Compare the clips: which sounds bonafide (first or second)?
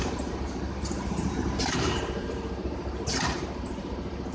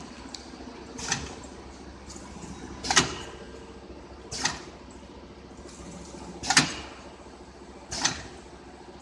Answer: second